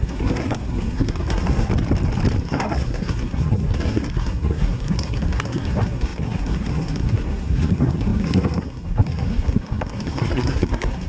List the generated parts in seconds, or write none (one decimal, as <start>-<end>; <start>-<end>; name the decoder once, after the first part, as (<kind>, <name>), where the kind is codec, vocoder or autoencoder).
0.0-1.7 (codec, SNAC); 2.4-11.1